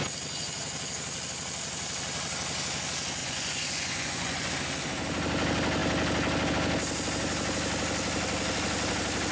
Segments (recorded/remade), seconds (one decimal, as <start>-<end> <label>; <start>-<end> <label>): 0.0-3.2 recorded; 3.2-4.5 remade; 4.5-9.3 recorded